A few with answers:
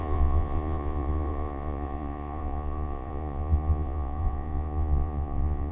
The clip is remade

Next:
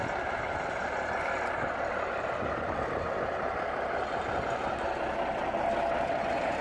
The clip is recorded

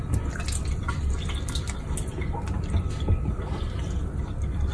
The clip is recorded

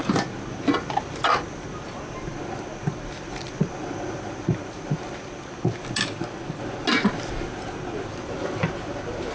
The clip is recorded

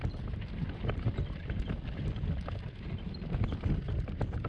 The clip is recorded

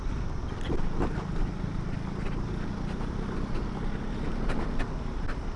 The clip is recorded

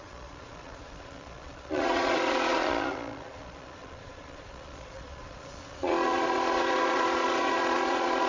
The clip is remade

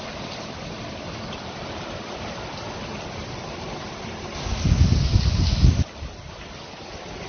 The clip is recorded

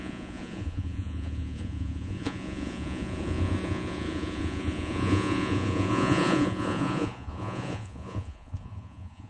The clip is remade